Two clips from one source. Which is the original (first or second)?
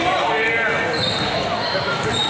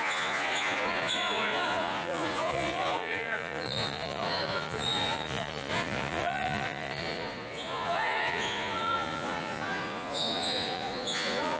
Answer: first